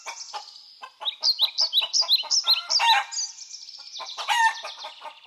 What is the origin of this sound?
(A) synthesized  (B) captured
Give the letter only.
B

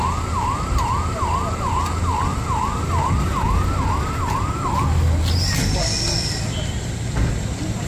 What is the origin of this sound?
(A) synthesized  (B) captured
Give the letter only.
B